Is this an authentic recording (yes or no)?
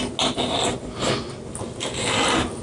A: yes